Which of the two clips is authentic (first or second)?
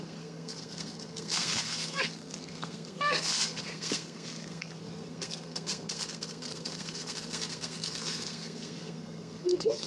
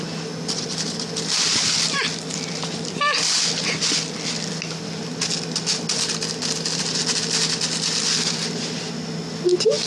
second